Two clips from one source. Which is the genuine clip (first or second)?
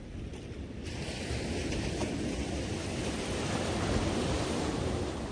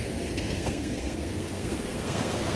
first